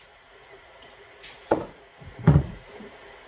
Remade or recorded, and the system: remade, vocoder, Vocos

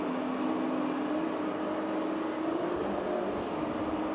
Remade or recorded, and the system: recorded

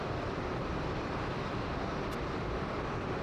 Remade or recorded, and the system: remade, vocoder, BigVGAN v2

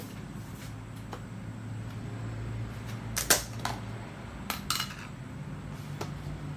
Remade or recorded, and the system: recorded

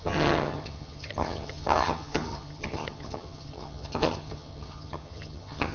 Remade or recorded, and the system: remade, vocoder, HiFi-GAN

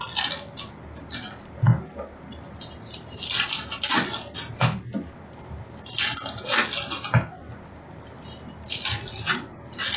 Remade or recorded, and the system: recorded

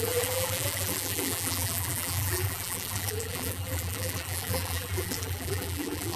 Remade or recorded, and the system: remade, vocoder, BigVGAN v2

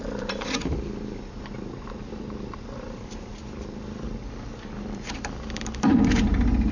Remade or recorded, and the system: remade, vocoder, BigVGAN v2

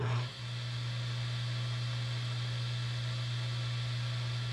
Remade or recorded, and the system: recorded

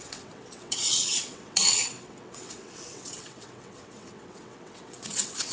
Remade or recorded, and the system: remade, vocoder, WaveNeXt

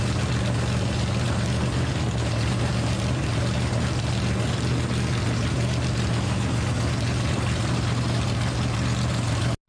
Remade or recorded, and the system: recorded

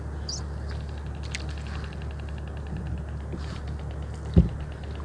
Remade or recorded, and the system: recorded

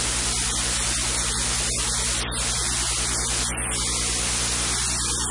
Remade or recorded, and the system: recorded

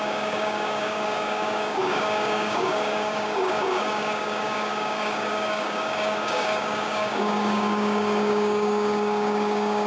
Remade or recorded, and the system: remade, codec, DAC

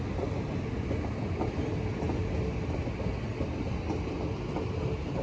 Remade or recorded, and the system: recorded